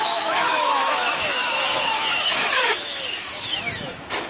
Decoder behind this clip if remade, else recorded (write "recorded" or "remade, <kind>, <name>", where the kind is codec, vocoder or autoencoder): remade, autoencoder, DAC-VAE